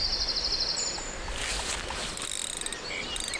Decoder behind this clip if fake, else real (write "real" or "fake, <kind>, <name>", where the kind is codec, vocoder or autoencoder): real